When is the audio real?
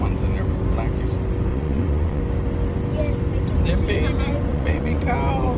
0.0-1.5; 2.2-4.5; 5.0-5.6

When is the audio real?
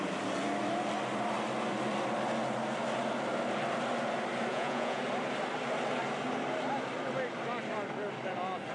0.0-4.5; 5.0-8.7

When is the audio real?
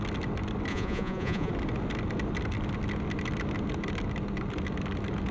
0.0-0.7; 1.5-5.3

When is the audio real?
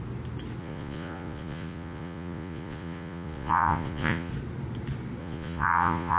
0.0-0.6; 4.3-5.2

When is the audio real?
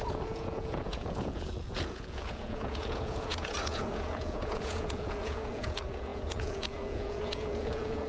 none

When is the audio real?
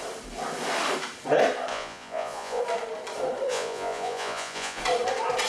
0.0-1.7; 2.6-3.5; 4.8-5.5